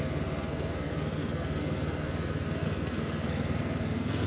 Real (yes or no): no